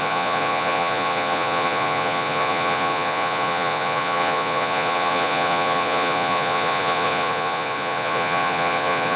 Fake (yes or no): yes